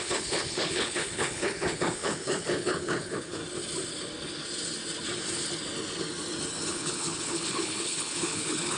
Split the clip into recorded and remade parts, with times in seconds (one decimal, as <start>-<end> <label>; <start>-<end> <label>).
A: 0.0-3.4 remade; 3.4-6.7 recorded; 6.7-8.8 remade

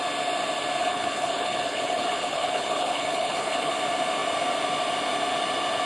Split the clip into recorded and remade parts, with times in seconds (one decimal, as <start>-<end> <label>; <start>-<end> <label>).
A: 0.0-0.8 recorded; 0.8-3.7 remade; 3.7-5.9 recorded

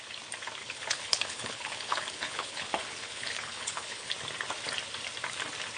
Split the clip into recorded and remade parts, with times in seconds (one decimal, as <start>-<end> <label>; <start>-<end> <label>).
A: 0.0-0.6 recorded; 0.6-4.1 remade; 4.1-5.8 recorded